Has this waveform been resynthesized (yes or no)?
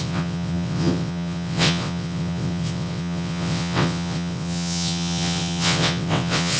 yes